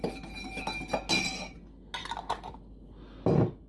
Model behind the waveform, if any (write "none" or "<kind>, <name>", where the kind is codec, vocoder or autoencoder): none